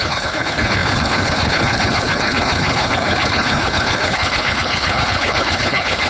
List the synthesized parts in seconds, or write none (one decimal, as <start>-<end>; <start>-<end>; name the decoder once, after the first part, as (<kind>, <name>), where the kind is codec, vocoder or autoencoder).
0.0-6.1 (codec, HILCodec)